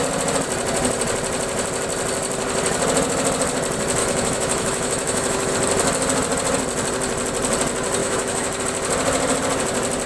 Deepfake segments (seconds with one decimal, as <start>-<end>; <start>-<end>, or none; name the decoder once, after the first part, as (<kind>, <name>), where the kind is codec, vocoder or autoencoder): 4.0-5.5 (autoencoder, DAC-VAE); 8.0-8.6